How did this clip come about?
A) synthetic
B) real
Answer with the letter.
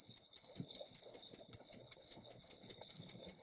A